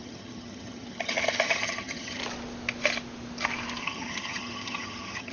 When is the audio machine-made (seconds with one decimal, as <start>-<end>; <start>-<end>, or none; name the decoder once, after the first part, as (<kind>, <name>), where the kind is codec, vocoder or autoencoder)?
0.0-2.2 (vocoder, HiFi-GAN); 3.8-5.3